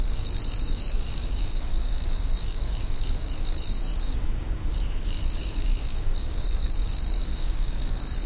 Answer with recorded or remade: remade